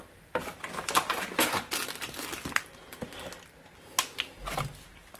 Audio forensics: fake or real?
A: real